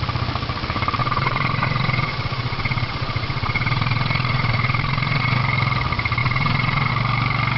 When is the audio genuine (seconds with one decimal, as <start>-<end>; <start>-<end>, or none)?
0.0-1.0; 5.4-6.2; 6.9-7.6